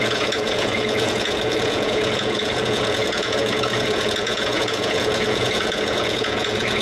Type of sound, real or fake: fake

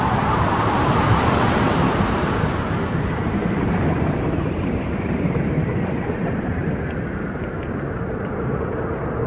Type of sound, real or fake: fake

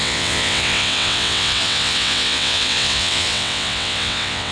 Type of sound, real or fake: fake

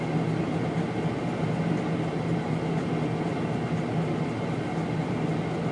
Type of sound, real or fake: real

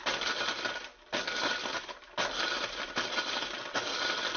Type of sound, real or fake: real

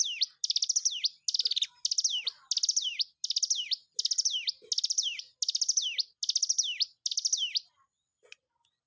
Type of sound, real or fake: real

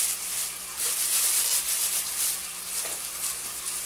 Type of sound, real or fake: real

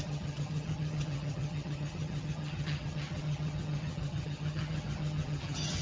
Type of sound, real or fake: fake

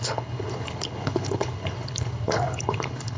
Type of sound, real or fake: fake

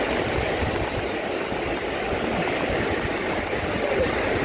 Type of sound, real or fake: real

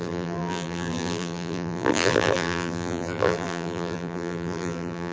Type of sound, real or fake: fake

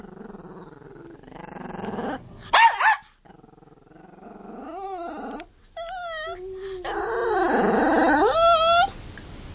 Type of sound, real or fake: real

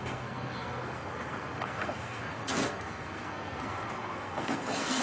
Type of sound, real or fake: fake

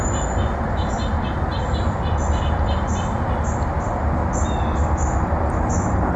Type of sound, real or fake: real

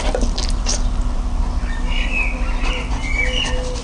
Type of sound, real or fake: real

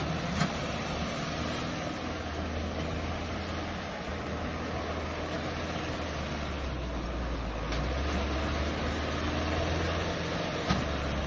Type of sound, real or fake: real